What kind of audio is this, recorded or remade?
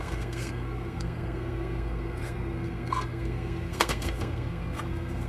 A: remade